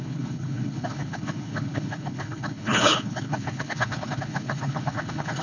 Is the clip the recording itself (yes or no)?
no